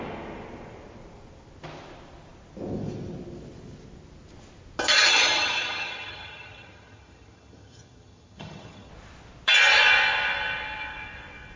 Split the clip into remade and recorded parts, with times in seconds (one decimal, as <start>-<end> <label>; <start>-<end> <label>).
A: 0.0-4.9 recorded; 4.9-8.9 remade; 8.9-11.6 recorded